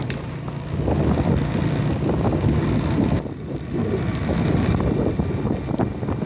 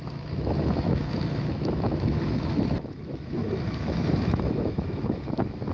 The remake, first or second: second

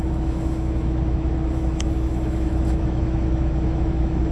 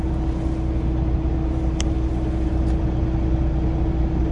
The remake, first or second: first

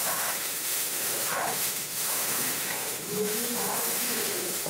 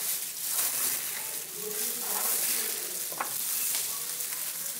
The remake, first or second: first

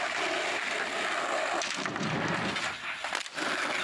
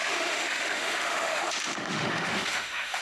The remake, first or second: second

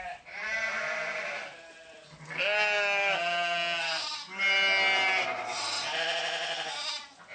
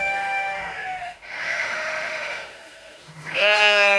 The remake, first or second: second